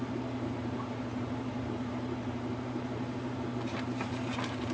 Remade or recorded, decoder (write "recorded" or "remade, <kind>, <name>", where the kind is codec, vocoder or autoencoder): remade, vocoder, BigVGAN v2